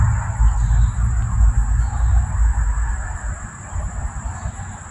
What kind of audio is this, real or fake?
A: real